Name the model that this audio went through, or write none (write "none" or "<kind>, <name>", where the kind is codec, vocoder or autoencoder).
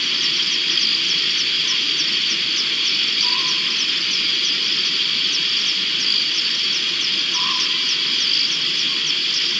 none